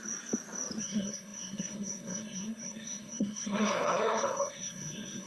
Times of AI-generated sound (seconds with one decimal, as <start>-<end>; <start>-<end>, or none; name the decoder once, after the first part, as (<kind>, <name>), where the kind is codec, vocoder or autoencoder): 0.8-5.3 (codec, SNAC)

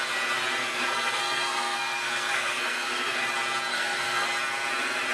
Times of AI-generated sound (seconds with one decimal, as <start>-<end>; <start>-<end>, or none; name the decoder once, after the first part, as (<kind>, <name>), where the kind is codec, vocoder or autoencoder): 0.6-3.2 (codec, SNAC); 3.7-4.3

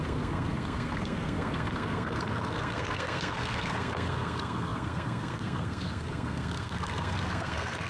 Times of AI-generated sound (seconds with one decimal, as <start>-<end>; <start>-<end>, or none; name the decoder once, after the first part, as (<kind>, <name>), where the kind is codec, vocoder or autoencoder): 0.0-7.9 (codec, SNAC)

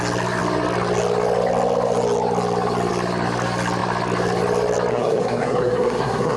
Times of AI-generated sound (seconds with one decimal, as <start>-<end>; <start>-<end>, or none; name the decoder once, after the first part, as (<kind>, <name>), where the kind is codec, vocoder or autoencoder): 4.9-6.4 (codec, SNAC)

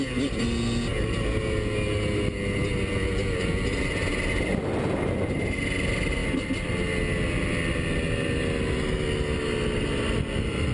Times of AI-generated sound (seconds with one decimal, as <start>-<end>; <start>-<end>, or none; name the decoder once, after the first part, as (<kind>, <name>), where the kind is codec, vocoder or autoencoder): none

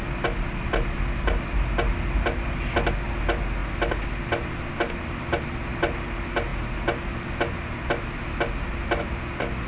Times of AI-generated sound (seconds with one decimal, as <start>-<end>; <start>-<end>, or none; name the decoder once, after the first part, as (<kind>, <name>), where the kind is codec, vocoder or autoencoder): none

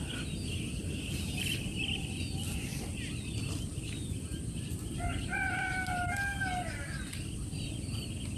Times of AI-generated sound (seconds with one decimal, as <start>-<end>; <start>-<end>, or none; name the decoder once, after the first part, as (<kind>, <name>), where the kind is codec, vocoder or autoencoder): none

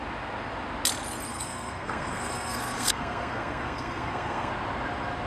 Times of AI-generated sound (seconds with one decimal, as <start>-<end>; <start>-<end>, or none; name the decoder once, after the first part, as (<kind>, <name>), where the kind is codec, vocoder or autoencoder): 1.3-4.5 (codec, SNAC)